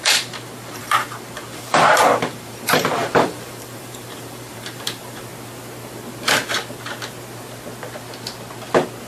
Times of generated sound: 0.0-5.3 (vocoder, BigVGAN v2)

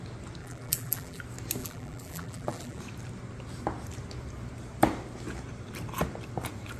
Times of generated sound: 0.4-1.2 (vocoder, BigVGAN v2); 1.6-2.8

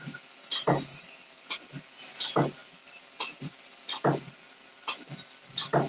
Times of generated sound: none

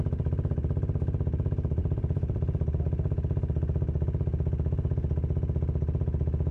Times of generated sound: 1.8-2.8 (vocoder, BigVGAN v2)

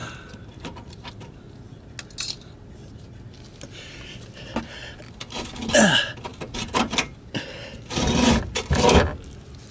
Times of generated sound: 0.0-1.1 (vocoder, BigVGAN v2); 6.3-7.1; 9.1-9.7

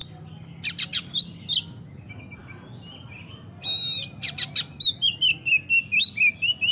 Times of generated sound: none

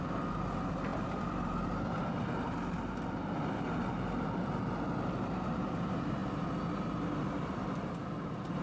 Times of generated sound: 0.0-6.2 (vocoder, BigVGAN v2); 7.3-8.6